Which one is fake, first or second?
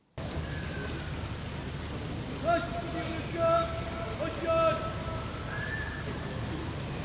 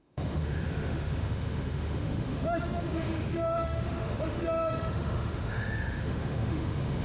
second